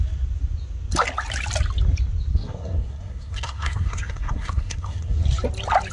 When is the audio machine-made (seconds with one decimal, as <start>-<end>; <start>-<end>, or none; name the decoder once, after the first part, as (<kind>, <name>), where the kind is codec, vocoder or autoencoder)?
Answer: 2.3-5.2 (codec, SNAC)